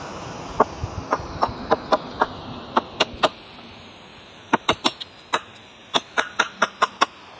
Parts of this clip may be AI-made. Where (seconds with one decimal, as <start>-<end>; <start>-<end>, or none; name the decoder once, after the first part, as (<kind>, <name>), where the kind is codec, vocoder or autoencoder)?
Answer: 4.1-5.3 (vocoder, BigVGAN v2)